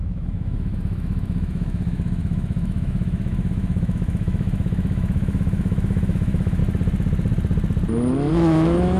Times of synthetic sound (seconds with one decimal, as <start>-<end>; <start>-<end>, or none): 0.0-6.6; 8.3-9.0